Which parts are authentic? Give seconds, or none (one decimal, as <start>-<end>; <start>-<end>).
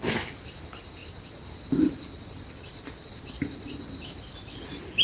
0.0-5.0